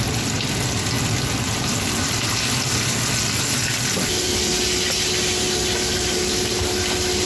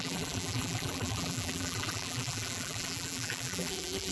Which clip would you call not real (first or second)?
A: second